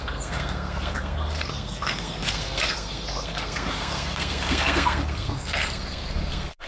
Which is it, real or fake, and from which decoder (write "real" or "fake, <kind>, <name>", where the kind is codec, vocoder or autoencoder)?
fake, codec, SNAC